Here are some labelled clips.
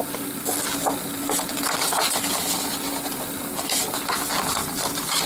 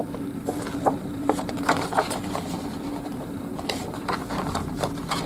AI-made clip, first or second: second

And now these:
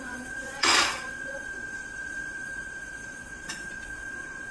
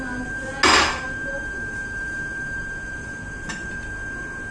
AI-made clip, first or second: first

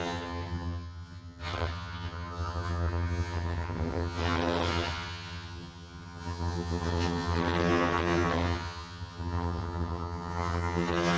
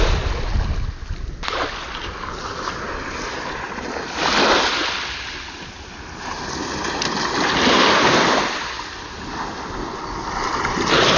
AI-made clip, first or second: first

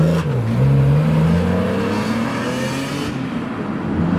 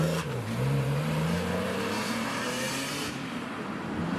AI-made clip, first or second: second